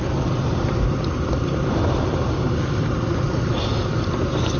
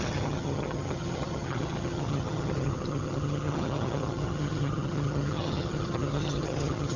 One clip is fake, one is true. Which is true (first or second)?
first